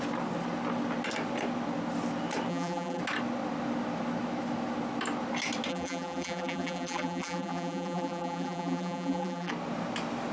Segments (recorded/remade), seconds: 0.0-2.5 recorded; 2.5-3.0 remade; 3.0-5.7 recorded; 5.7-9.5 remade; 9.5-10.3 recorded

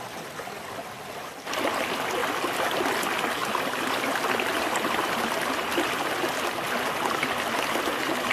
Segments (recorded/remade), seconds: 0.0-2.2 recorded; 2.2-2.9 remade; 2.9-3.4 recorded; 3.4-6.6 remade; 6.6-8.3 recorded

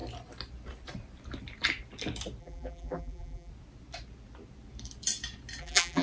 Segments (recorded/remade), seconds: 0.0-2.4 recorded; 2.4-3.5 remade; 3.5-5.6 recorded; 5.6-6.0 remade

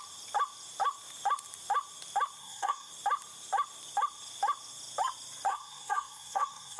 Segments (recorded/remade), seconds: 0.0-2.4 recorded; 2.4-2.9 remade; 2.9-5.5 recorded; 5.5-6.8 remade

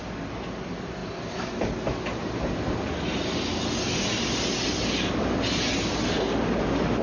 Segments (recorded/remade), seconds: 0.0-7.0 recorded

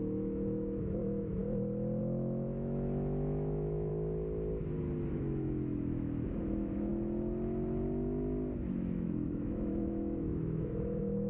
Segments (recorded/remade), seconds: 0.0-1.4 remade; 1.4-2.0 recorded; 2.0-3.9 remade; 3.9-5.1 recorded; 5.1-6.9 remade; 6.9-8.7 recorded; 8.7-11.3 remade